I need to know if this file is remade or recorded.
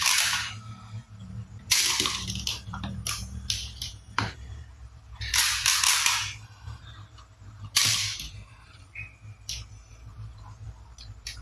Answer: remade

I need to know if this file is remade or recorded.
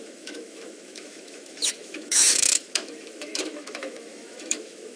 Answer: remade